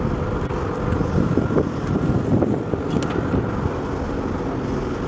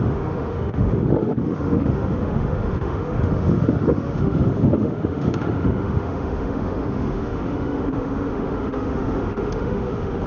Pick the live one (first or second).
first